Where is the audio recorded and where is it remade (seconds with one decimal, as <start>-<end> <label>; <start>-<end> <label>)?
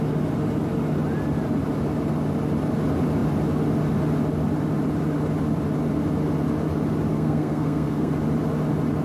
0.0-7.1 recorded; 7.1-8.1 remade; 8.1-9.0 recorded